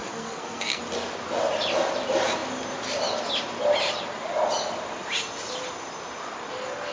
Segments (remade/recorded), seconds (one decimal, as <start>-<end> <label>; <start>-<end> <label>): 0.0-0.8 remade; 0.8-6.9 recorded

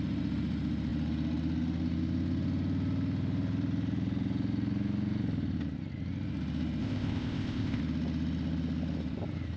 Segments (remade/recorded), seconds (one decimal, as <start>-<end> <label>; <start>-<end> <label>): 0.0-6.8 recorded; 6.8-7.8 remade; 7.8-9.6 recorded

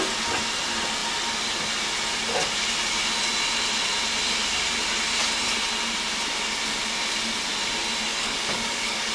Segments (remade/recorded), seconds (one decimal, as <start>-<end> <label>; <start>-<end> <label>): 0.0-8.1 recorded; 8.1-9.1 remade

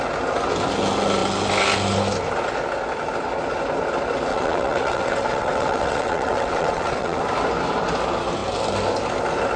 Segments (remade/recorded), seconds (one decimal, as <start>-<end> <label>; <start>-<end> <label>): 0.0-4.3 recorded; 4.3-7.2 remade; 7.2-9.6 recorded